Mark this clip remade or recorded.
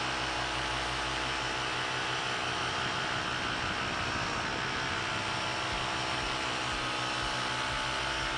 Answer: recorded